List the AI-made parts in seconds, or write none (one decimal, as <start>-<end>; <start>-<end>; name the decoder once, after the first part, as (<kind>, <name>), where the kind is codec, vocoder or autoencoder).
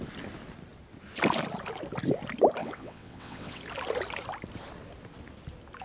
2.6-3.6 (vocoder, WaveNeXt)